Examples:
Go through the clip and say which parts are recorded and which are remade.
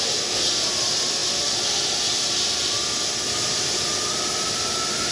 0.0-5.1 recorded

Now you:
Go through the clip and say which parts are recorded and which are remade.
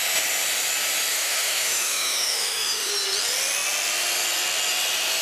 0.0-1.1 recorded; 1.1-2.9 remade; 2.9-5.2 recorded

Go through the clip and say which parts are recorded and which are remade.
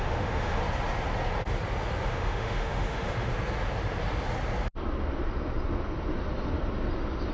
0.0-0.6 remade; 0.6-2.1 recorded; 2.1-3.3 remade; 3.3-7.3 recorded